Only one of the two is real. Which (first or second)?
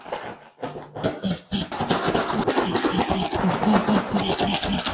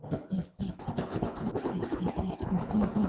first